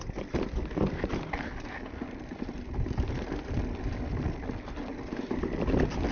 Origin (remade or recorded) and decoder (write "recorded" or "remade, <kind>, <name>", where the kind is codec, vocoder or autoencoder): recorded